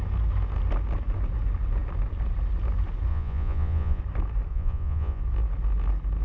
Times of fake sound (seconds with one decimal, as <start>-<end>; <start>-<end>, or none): 3.1-4.0; 4.5-5.2